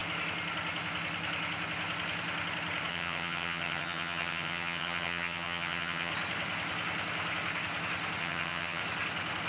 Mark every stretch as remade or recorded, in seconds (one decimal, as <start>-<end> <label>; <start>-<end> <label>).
0.0-2.9 recorded; 2.9-6.1 remade; 6.1-8.2 recorded; 8.2-8.8 remade; 8.8-9.5 recorded

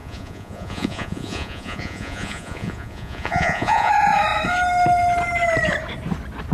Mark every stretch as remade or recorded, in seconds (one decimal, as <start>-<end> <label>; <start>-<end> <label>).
0.0-3.9 remade; 3.9-6.5 recorded

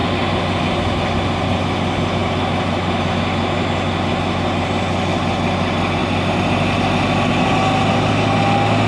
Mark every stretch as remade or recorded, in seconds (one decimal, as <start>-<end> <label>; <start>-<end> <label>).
0.0-8.9 recorded

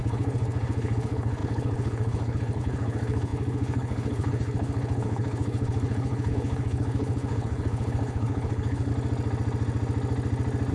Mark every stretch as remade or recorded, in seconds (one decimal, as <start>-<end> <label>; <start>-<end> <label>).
0.0-8.9 remade; 8.9-10.7 recorded

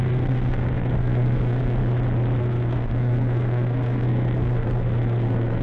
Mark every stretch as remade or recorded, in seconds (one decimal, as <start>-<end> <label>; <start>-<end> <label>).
0.0-1.8 remade; 1.8-2.4 recorded; 2.4-5.6 remade

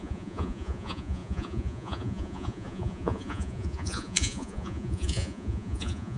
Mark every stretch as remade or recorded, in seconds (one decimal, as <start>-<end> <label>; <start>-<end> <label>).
0.0-6.2 remade

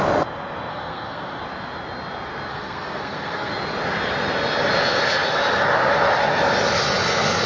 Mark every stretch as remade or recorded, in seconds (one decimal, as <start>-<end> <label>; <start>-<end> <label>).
0.0-0.7 recorded; 0.7-1.4 remade; 1.4-2.5 recorded; 2.5-3.5 remade; 3.5-7.5 recorded

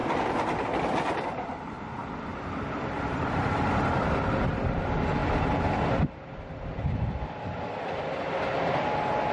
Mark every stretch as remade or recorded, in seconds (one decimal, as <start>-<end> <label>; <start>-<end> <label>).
0.0-9.3 recorded